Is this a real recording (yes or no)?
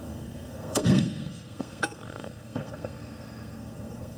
no